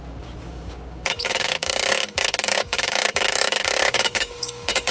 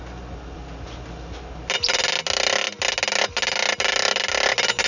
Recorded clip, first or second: second